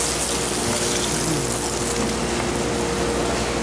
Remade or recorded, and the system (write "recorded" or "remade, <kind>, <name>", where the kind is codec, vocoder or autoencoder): recorded